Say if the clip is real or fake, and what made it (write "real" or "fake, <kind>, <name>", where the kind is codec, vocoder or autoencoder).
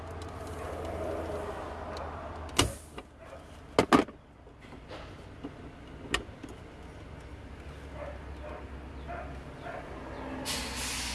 real